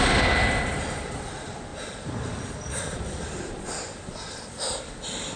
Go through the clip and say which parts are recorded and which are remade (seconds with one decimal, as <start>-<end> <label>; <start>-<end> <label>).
0.0-1.7 recorded; 1.7-4.9 remade; 4.9-5.4 recorded